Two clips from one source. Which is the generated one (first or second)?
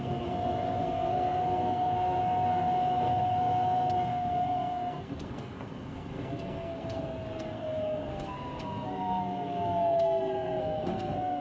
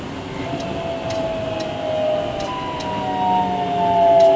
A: first